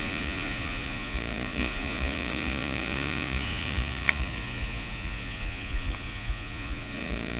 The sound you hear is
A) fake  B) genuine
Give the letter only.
A